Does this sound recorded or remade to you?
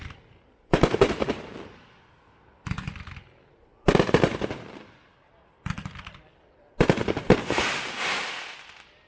recorded